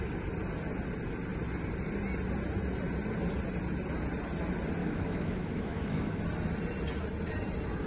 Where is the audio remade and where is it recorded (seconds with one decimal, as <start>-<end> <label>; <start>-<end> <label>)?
0.0-4.8 recorded; 4.8-6.2 remade; 6.2-7.9 recorded